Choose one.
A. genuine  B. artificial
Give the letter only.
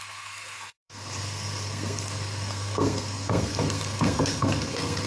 B